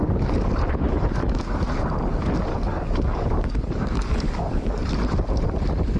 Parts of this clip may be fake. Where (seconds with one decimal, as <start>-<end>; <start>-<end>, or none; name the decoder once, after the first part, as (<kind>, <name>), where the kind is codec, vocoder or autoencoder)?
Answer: 0.0-0.5 (codec, DAC); 0.9-1.7; 2.5-4.8